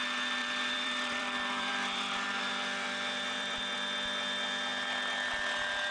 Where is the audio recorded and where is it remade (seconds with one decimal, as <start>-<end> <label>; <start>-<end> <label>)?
0.0-0.4 recorded; 0.4-3.6 remade; 3.6-5.9 recorded